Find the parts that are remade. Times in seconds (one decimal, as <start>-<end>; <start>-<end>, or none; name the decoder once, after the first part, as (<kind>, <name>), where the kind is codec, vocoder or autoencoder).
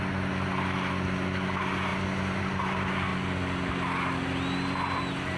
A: none